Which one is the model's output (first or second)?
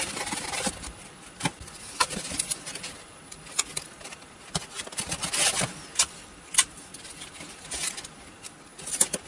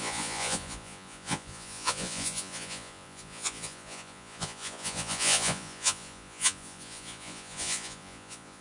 second